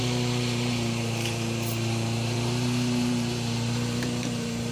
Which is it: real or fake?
fake